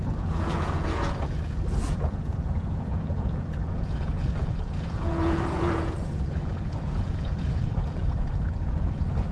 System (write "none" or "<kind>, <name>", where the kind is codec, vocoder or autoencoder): vocoder, Vocos